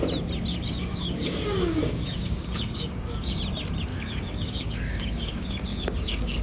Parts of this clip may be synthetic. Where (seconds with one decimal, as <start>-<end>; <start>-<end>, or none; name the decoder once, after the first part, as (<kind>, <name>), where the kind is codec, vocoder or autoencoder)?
0.5-3.4 (codec, DAC); 3.9-6.4